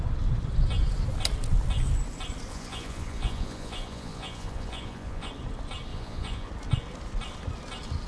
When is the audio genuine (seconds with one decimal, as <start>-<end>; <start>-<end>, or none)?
0.0-2.5; 5.3-5.9; 6.5-8.1